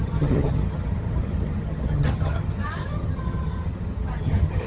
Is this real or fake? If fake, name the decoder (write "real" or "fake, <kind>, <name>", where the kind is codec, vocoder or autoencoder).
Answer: fake, vocoder, HiFi-GAN